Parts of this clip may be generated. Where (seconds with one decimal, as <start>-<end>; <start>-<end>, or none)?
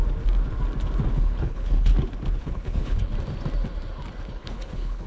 1.1-1.9; 2.4-3.1; 4.3-5.1